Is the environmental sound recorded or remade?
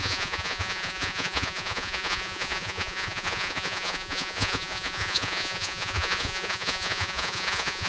remade